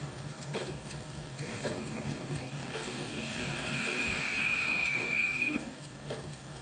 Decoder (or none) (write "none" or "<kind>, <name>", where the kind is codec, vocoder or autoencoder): codec, DAC